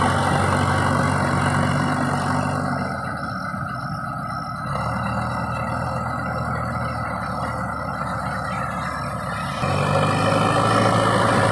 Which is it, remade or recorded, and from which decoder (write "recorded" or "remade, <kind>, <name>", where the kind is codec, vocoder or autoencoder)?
recorded